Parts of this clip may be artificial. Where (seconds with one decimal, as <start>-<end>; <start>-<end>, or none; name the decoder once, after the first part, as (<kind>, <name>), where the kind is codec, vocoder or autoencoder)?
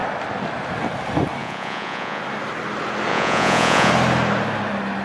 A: 1.4-2.2 (vocoder, Vocos); 3.1-3.9